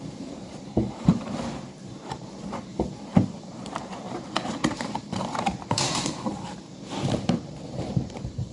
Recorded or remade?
remade